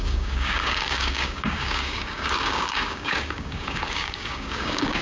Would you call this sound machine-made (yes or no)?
yes